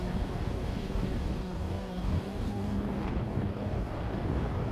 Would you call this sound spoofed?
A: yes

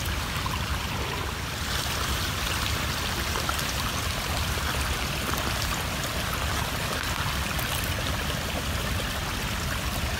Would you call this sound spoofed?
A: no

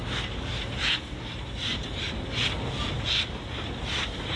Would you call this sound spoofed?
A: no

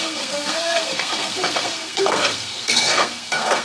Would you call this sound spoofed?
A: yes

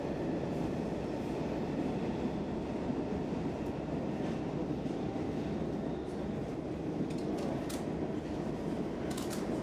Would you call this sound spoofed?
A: no